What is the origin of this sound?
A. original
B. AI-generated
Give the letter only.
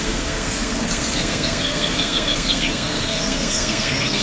B